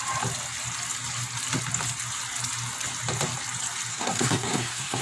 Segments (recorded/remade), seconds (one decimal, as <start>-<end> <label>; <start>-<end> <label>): 0.0-3.9 recorded; 3.9-5.0 remade